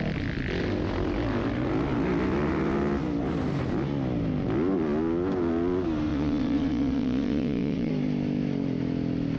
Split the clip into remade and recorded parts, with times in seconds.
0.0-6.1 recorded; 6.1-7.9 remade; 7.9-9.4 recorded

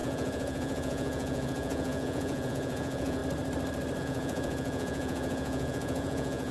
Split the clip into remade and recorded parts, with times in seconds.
0.0-3.2 remade; 3.2-4.0 recorded; 4.0-6.5 remade

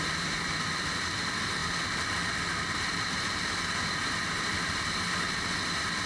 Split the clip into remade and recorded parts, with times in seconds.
0.0-6.1 recorded

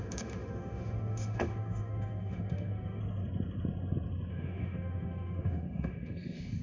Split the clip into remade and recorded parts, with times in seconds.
0.0-3.0 remade; 3.0-4.3 recorded; 4.3-6.6 remade

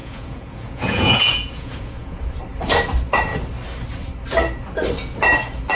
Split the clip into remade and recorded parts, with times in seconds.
0.0-2.2 remade; 2.2-5.7 recorded

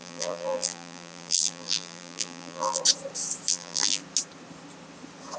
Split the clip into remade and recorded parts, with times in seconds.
0.0-2.8 remade; 2.8-3.5 recorded; 3.5-4.0 remade; 4.0-5.4 recorded

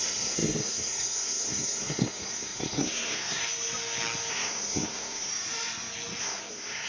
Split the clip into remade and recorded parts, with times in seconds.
0.0-3.4 remade; 3.4-4.3 recorded; 4.3-5.3 remade; 5.3-6.2 recorded; 6.2-6.9 remade